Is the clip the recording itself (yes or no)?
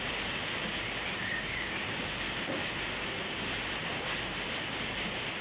yes